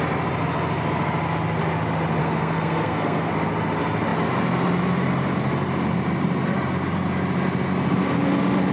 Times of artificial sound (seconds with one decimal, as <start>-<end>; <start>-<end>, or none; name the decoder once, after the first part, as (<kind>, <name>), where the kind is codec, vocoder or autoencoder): 2.2-3.3 (codec, SNAC)